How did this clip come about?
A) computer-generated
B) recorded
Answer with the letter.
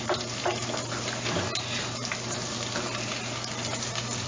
B